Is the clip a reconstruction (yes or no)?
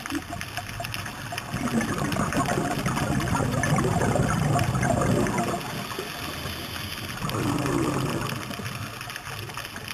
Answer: no